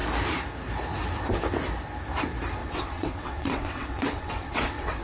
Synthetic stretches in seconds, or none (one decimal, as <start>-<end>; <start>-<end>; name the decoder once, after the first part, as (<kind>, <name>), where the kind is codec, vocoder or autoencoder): 2.6-5.0 (vocoder, WaveNeXt)